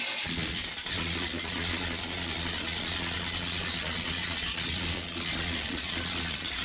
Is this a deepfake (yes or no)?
yes